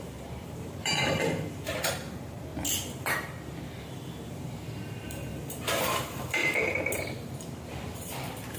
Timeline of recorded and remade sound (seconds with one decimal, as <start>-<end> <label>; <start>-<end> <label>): 0.0-2.5 remade; 2.5-4.3 recorded; 4.3-5.3 remade; 5.3-6.0 recorded; 6.0-6.4 remade; 6.4-7.1 recorded; 7.1-8.6 remade